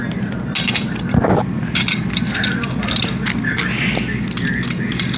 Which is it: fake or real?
real